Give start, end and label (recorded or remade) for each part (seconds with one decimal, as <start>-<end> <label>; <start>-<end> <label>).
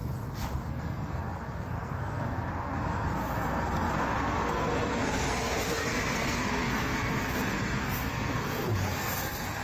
0.0-0.7 recorded; 0.7-9.6 remade